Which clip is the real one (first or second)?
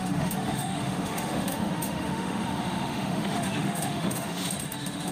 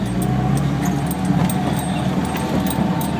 second